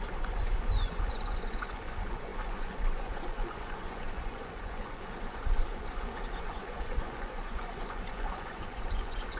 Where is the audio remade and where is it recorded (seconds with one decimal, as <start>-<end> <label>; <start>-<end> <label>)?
0.0-9.4 remade